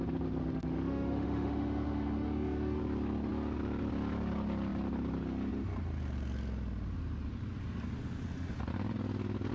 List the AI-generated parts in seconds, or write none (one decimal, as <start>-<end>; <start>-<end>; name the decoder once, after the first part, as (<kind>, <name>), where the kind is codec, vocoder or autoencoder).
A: 0.4-2.8 (autoencoder, DAC-VAE)